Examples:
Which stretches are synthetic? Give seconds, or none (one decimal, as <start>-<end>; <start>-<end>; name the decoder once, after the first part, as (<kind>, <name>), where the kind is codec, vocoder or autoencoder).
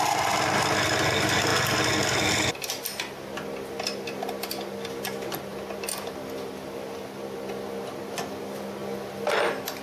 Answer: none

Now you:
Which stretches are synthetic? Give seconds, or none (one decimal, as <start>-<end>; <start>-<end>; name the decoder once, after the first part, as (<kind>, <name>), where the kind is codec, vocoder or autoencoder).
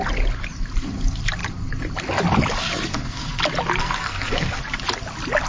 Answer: 2.9-3.4 (codec, SNAC); 3.8-4.6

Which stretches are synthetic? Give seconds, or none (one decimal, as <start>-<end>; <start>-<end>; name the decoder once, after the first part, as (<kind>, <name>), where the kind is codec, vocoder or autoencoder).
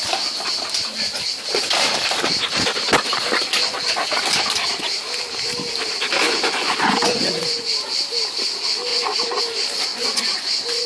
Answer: 6.2-7.7 (vocoder, Vocos); 8.9-9.4; 9.9-10.9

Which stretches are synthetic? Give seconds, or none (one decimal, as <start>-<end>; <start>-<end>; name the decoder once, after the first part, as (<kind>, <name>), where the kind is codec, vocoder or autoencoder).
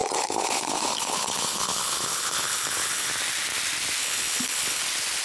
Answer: 0.0-3.1 (codec, HILCodec); 4.0-4.8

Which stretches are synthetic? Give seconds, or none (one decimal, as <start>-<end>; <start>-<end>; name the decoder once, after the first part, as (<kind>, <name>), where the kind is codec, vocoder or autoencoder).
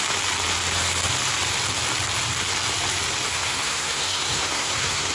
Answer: 3.3-5.1 (codec, SNAC)